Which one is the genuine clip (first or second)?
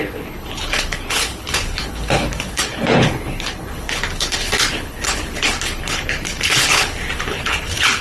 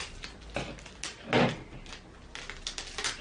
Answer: second